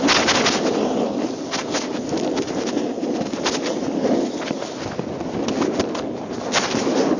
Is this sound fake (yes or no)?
no